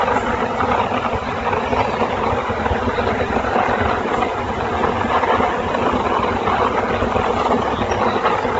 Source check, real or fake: real